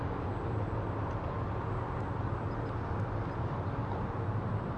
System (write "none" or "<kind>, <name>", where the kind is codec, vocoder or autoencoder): none